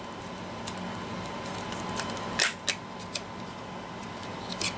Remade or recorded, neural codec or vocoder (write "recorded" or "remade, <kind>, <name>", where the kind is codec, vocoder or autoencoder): recorded